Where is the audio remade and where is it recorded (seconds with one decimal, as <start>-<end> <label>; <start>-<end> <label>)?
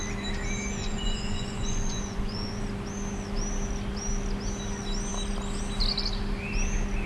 0.0-0.8 recorded; 0.8-2.6 remade; 2.6-7.1 recorded